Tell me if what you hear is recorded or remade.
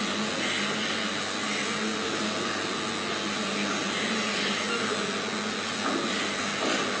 recorded